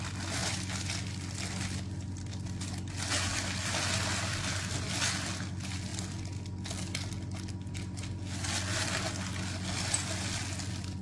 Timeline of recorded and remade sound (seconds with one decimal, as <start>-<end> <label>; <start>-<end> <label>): 0.0-11.0 recorded